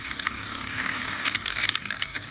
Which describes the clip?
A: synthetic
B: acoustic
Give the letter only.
A